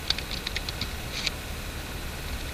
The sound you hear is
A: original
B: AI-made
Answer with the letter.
A